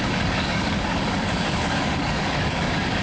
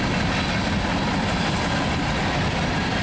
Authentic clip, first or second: second